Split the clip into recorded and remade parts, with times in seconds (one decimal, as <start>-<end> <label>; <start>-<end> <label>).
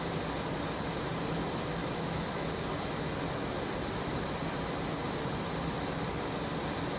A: 0.0-1.8 recorded; 1.8-2.5 remade; 2.5-7.0 recorded